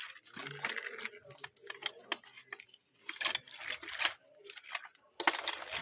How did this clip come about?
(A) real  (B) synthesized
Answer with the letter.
A